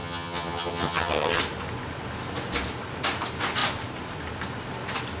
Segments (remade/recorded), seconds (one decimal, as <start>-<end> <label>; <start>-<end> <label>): 0.0-1.4 remade; 1.4-5.2 recorded